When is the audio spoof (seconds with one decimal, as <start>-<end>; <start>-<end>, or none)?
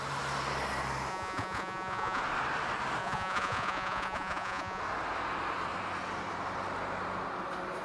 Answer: 1.1-2.2; 3.0-4.8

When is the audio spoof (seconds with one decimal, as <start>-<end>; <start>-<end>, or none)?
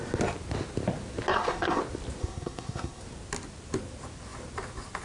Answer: 1.3-1.8; 2.2-3.0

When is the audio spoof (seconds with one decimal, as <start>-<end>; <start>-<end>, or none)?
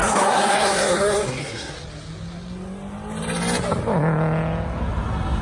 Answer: 0.0-1.7